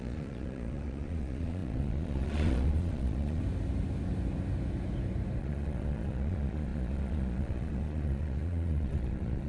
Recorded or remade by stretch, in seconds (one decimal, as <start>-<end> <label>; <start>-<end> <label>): 0.0-3.4 remade; 3.4-5.4 recorded; 5.4-9.5 remade